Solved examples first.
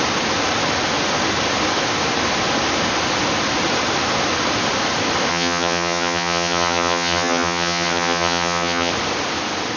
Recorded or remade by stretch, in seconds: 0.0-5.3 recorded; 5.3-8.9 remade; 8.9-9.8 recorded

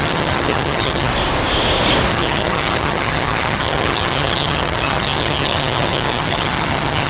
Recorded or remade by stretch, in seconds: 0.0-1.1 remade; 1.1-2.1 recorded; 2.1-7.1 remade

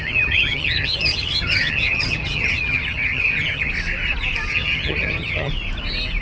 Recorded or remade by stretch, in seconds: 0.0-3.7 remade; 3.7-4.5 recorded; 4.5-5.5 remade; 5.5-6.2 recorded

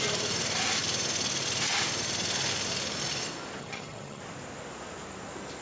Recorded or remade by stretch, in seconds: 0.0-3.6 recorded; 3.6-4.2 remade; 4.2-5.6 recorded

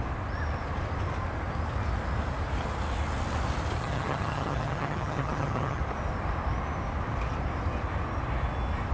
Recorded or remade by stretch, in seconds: 0.0-3.8 recorded; 3.8-5.8 remade; 5.8-8.9 recorded